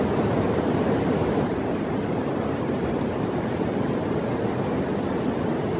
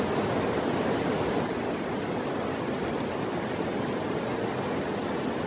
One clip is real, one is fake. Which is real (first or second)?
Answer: second